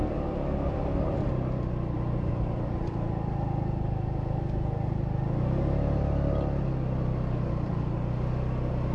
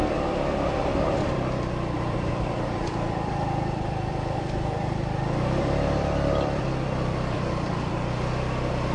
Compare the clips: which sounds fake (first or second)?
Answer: second